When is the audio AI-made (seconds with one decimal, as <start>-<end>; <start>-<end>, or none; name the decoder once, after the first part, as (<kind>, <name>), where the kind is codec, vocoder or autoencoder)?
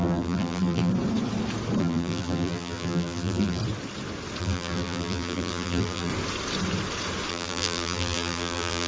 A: 0.0-0.9 (vocoder, BigVGAN v2); 1.8-3.6; 4.4-6.1; 7.3-8.9